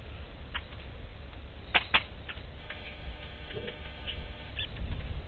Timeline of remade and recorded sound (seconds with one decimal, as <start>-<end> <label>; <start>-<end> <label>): 0.0-2.6 recorded; 2.6-4.5 remade; 4.5-5.3 recorded